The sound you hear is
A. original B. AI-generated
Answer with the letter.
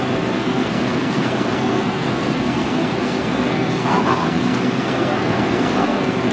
B